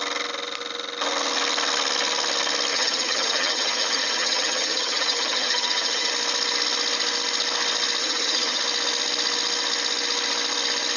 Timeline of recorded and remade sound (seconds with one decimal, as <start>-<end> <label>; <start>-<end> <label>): 0.0-2.7 recorded; 2.7-6.1 remade; 6.1-8.0 recorded; 8.0-8.6 remade; 8.6-11.0 recorded